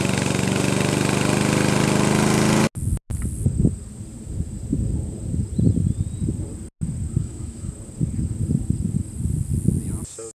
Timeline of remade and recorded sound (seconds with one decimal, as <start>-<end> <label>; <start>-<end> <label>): 0.0-7.2 recorded; 7.2-7.7 remade; 7.7-10.3 recorded